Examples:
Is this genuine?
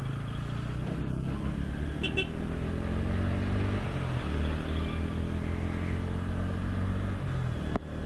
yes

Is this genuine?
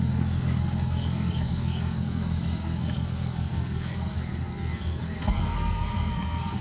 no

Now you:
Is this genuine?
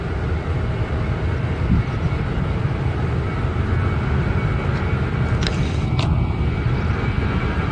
yes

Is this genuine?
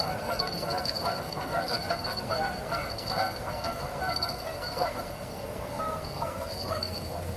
no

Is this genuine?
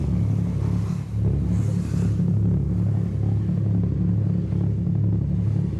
yes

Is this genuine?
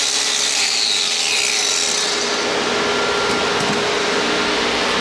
yes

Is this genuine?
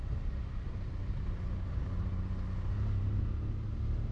yes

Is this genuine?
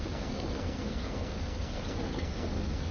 no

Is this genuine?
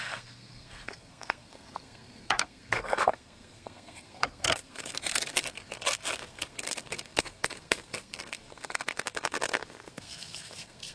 no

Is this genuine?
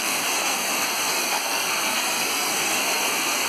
no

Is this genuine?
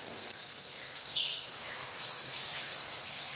no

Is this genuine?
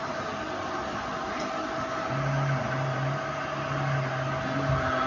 yes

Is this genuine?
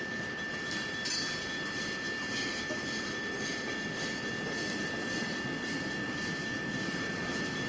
yes